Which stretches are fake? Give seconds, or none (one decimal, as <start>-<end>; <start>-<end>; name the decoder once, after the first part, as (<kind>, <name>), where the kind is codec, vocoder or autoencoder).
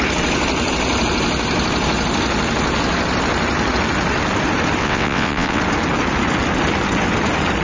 4.8-5.6 (vocoder, WaveNeXt)